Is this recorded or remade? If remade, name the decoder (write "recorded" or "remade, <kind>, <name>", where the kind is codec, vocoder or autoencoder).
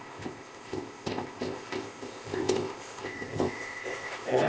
remade, codec, ZipCodec